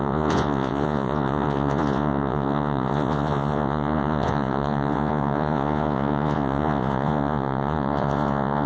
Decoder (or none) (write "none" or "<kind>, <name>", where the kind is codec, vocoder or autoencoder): vocoder, Vocos